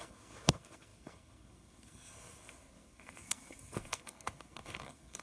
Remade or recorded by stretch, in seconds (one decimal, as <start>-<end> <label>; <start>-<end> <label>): 0.0-5.2 remade